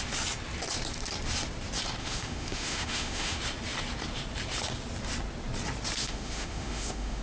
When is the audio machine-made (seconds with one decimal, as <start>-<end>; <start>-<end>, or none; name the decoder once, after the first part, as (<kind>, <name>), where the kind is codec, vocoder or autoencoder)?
2.0-3.4 (autoencoder, DAC-VAE); 6.0-7.2